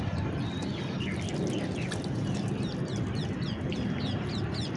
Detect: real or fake fake